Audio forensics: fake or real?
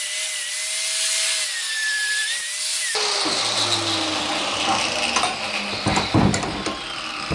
real